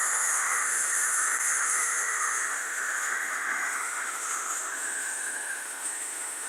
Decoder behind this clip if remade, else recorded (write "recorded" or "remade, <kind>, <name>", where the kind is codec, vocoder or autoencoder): remade, autoencoder, DAC-VAE